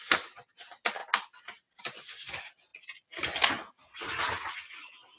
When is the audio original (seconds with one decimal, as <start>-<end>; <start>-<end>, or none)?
0.0-5.2